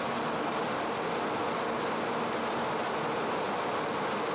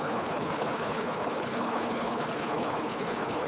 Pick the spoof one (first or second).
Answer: second